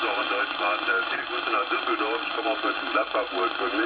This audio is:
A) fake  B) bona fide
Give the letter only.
B